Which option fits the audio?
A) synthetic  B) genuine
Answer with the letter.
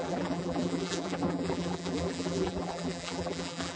A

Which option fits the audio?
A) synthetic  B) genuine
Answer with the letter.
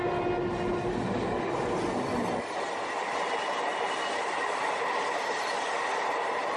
B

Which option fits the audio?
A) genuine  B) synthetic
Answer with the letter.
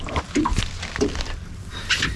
A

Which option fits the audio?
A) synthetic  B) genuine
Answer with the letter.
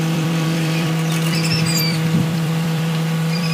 A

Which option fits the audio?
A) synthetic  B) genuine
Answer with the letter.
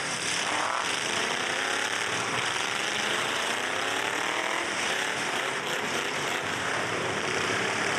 A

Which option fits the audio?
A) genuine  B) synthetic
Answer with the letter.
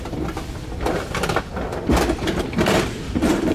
B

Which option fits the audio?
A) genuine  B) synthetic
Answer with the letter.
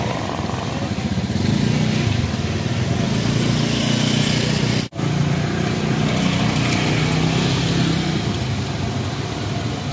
A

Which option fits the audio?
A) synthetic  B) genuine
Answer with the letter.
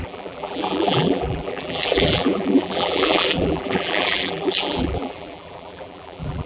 A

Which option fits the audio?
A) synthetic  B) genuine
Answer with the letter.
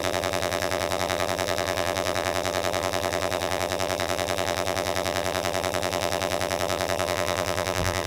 A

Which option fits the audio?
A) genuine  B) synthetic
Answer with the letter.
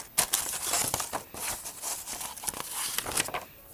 A